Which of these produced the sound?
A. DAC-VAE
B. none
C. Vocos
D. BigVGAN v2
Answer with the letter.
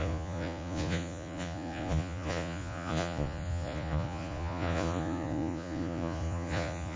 C